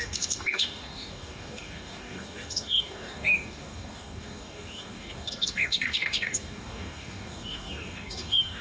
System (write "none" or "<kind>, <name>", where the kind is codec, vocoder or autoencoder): codec, DAC